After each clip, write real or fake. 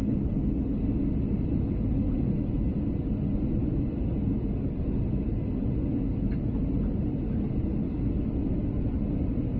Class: real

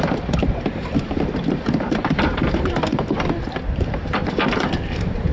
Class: fake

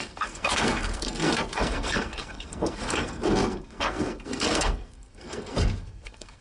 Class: fake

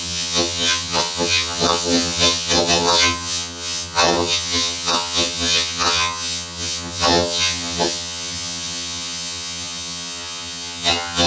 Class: fake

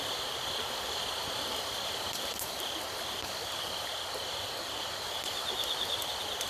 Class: real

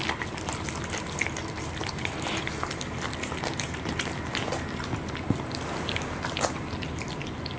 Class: real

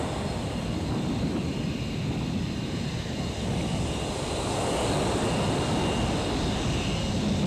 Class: real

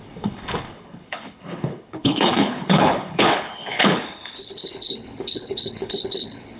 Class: fake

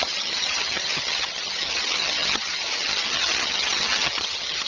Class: fake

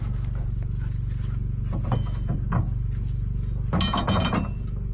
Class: real